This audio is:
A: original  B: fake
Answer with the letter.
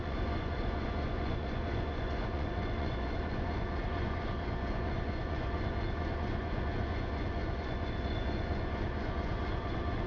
B